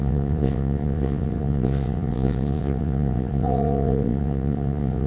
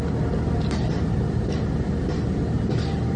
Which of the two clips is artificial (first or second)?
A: first